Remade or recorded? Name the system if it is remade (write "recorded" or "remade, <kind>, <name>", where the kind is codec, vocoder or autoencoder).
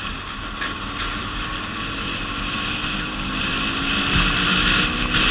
recorded